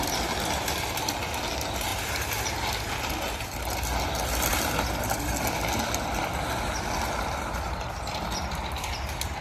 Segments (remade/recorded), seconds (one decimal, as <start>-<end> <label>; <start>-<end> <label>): 0.0-9.4 recorded